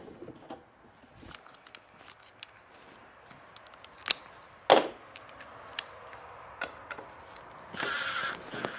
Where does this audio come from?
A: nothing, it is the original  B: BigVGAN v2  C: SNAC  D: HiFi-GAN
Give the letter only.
A